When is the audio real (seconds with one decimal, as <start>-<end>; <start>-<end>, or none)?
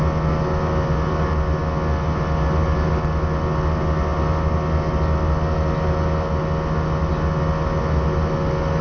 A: 0.0-8.8